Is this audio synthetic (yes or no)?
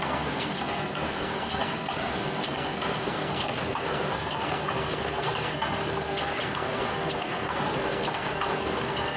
yes